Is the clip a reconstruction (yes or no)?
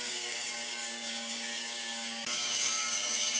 yes